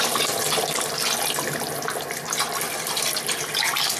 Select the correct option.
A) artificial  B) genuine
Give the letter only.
B